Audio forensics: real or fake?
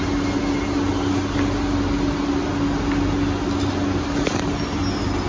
real